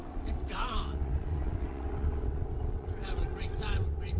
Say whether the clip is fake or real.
fake